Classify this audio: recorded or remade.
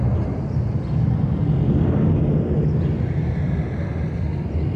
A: recorded